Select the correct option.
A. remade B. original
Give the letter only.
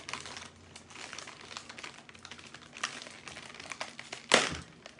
B